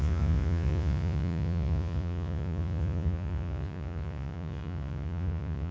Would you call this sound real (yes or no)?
no